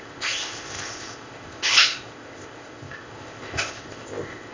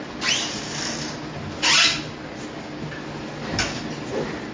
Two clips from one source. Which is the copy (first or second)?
first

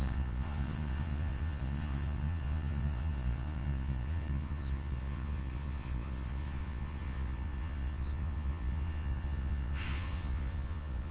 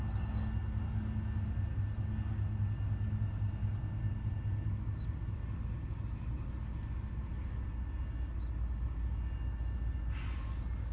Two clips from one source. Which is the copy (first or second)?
first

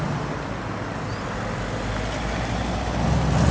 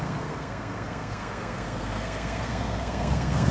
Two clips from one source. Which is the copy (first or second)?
second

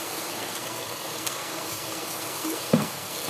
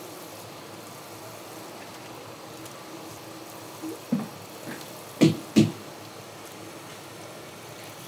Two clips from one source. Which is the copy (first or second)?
first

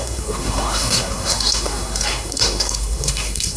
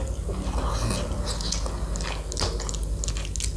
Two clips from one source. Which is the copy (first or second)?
first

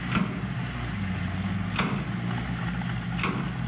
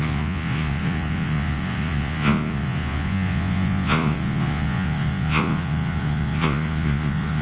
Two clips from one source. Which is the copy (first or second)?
second